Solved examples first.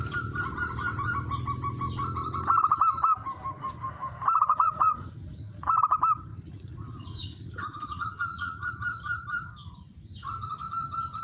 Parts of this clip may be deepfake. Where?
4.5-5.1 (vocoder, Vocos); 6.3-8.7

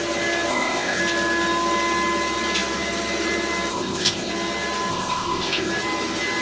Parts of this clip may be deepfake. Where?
0.5-1.0 (codec, ZipCodec); 3.7-4.3; 4.9-5.7

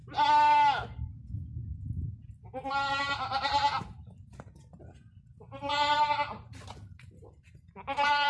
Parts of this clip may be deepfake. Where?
2.9-5.0 (vocoder, BigVGAN v2); 6.5-8.3

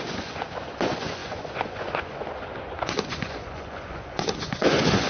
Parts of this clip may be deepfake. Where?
0.0-5.1 (vocoder, Vocos)

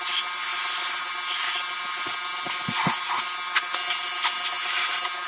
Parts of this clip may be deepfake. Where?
none

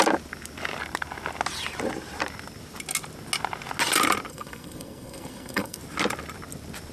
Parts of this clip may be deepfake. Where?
4.3-5.8 (codec, SNAC)

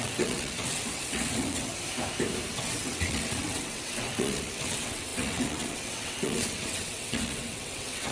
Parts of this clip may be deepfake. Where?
0.0-1.7 (vocoder, WaveNeXt); 2.5-8.1

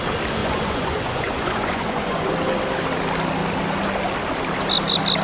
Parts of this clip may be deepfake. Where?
0.4-2.3 (vocoder, Vocos)